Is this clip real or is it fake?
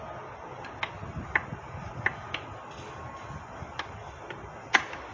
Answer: real